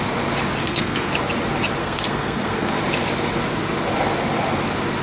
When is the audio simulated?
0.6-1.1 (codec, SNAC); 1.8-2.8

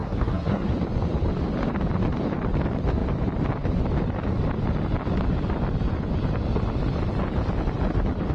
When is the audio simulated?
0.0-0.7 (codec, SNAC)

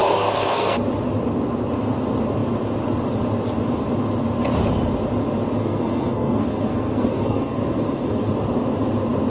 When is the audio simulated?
0.0-0.8 (codec, SNAC); 5.6-8.3